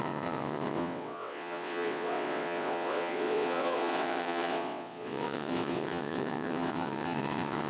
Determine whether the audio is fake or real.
fake